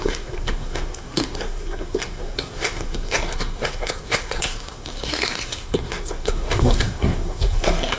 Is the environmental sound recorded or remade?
remade